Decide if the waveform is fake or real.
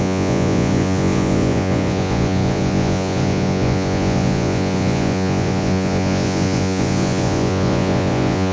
fake